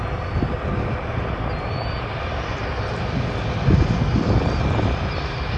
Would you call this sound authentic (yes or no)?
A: yes